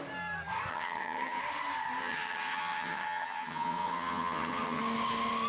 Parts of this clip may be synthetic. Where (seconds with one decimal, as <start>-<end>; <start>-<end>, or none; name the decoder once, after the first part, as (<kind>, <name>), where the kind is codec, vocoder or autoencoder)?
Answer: 0.7-1.4 (vocoder, HiFi-GAN); 2.0-4.8